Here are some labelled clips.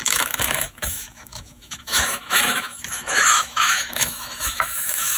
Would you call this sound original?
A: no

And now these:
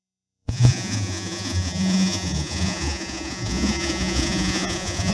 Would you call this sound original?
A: no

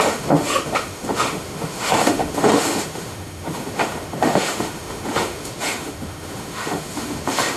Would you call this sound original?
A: no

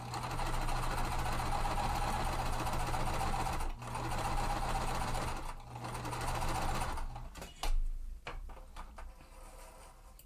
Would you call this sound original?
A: yes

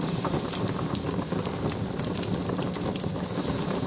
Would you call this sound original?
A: yes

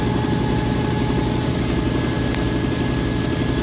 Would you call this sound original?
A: yes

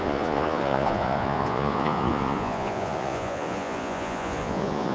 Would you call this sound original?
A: no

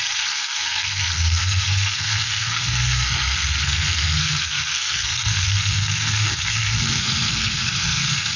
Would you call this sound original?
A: no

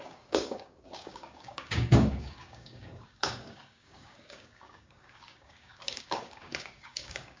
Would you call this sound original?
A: no